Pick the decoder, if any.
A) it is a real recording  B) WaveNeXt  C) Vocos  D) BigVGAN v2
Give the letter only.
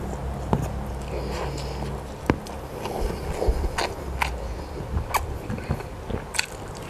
A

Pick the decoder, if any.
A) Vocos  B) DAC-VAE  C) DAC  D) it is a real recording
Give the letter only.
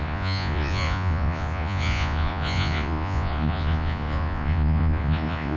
A